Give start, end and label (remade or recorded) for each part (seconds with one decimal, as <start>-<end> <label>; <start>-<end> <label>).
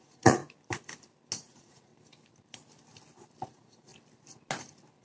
0.0-0.4 remade; 0.4-1.4 recorded; 1.4-1.9 remade; 1.9-3.5 recorded; 3.5-3.9 remade; 3.9-5.0 recorded